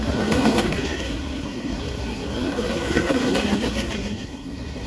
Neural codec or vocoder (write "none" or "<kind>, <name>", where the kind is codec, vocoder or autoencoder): codec, SNAC